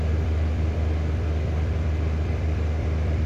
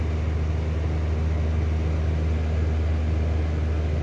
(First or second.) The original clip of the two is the second